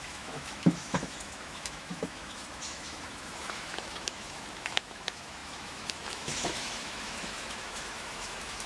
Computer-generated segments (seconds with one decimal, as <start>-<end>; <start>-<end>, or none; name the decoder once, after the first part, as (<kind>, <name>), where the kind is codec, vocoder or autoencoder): 0.0-8.7 (autoencoder, DAC-VAE)